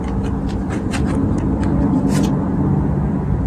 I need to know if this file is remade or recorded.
remade